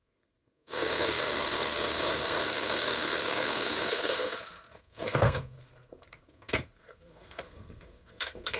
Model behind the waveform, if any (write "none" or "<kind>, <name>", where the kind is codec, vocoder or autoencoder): codec, SNAC